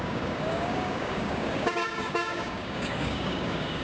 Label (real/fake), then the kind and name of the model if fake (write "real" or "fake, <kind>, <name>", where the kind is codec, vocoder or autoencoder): fake, codec, DAC